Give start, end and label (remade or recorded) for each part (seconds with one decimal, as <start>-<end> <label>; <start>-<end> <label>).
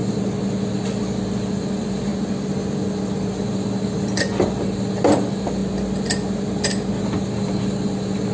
0.0-0.5 recorded; 0.5-2.1 remade; 2.1-3.3 recorded; 3.3-5.6 remade; 5.6-7.0 recorded; 7.0-8.3 remade